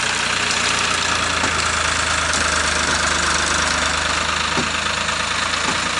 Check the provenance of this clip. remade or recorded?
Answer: recorded